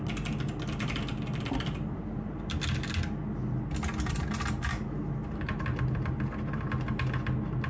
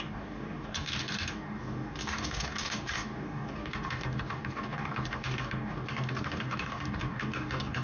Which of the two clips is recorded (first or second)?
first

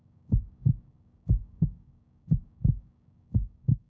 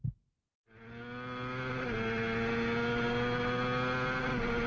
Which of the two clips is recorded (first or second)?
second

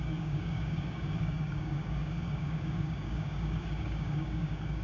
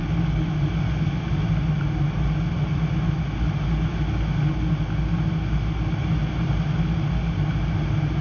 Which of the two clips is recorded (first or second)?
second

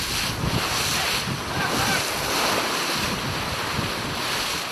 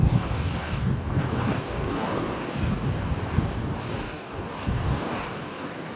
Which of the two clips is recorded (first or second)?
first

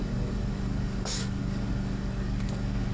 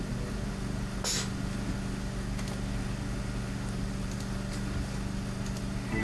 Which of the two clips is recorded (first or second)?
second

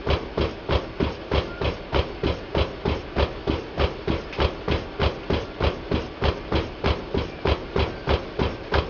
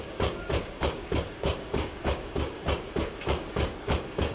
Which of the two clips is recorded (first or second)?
first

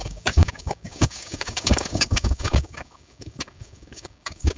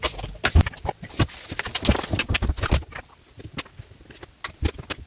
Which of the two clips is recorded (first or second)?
second